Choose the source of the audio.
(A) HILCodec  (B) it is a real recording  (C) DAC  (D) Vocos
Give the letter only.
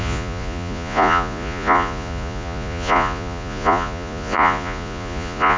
D